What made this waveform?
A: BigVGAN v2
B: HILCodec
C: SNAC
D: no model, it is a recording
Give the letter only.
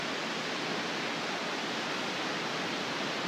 D